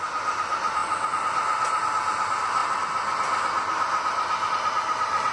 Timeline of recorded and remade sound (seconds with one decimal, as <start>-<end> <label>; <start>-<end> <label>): 0.0-5.3 recorded